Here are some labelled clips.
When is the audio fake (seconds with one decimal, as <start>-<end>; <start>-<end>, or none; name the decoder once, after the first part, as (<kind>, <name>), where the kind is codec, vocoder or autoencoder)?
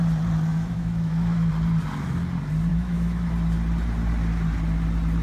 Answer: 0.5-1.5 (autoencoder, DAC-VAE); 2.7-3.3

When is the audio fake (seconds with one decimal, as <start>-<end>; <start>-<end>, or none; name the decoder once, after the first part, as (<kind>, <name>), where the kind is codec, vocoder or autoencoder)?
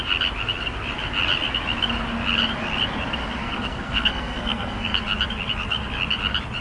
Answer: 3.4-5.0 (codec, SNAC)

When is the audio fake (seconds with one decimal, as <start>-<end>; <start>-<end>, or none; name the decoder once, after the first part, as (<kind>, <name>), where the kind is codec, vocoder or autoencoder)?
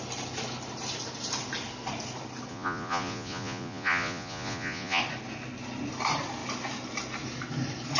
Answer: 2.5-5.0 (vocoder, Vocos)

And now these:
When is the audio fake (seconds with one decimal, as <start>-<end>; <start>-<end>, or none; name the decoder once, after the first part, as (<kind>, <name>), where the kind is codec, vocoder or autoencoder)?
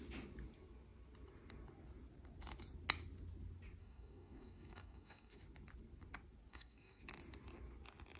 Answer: 3.8-5.4 (codec, DAC); 6.5-7.0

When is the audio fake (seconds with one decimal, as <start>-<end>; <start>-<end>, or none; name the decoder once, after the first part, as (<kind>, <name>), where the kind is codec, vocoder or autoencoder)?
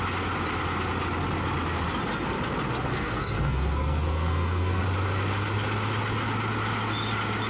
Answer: 2.9-4.8 (codec, SNAC)